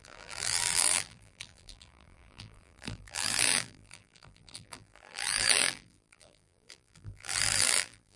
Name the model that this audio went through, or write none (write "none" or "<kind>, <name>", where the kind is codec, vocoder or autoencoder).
vocoder, BigVGAN v2